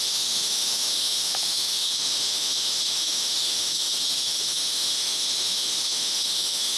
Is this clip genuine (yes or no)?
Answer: no